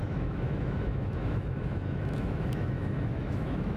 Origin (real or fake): fake